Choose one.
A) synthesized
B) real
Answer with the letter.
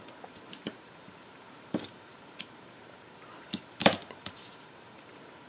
A